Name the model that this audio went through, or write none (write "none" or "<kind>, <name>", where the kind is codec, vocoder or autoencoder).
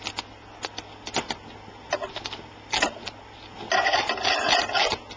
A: none